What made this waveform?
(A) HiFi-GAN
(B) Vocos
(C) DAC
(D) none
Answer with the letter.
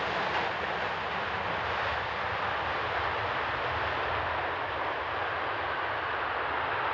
D